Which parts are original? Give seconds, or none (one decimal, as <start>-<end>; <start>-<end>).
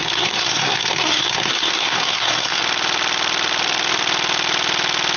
2.6-5.2